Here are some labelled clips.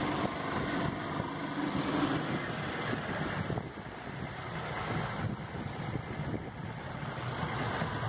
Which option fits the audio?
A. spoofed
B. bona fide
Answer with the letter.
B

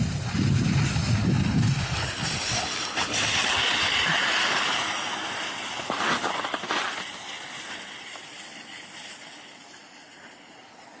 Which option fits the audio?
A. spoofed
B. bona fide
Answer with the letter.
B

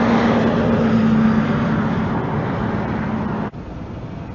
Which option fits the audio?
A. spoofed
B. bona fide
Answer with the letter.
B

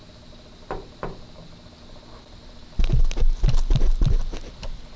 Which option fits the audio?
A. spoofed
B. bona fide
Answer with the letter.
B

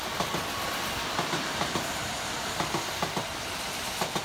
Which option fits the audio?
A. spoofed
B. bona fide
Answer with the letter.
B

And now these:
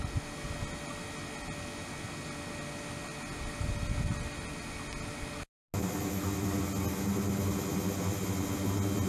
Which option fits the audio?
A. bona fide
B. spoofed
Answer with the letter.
A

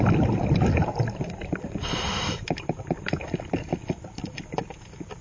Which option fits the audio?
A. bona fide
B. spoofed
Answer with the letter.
A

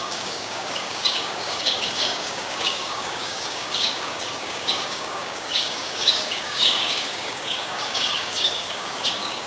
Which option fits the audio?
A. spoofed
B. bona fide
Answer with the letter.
A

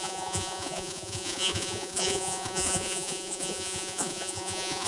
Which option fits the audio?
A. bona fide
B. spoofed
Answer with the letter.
B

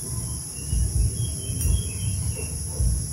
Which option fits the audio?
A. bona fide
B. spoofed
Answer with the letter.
A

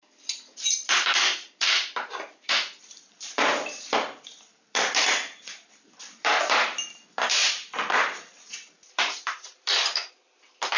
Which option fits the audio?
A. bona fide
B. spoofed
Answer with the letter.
B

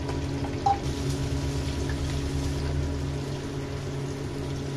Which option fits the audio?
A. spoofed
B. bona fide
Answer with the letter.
B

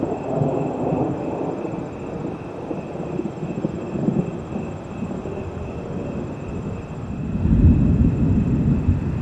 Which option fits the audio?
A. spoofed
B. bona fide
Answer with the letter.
B